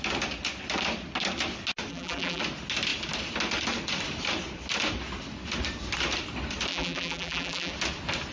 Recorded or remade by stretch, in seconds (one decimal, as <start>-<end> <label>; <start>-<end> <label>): 0.0-1.9 recorded; 1.9-2.4 remade; 2.4-6.7 recorded; 6.7-7.7 remade; 7.7-8.3 recorded